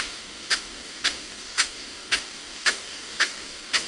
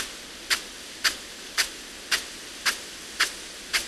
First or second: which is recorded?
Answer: second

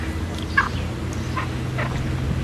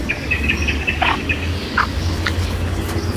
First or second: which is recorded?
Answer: first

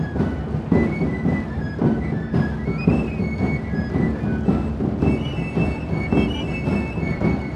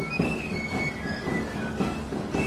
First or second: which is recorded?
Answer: first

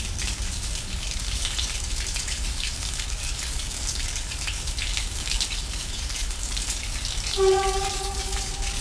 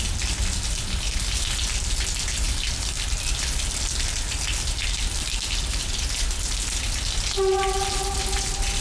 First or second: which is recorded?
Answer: second